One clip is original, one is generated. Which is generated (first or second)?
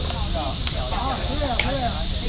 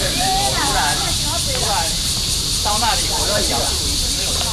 second